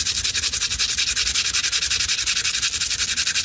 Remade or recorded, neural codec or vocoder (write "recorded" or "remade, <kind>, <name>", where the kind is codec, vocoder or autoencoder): recorded